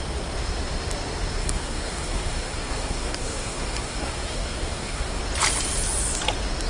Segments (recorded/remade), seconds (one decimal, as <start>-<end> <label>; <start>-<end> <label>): 0.0-1.4 recorded; 1.4-5.2 remade; 5.2-6.7 recorded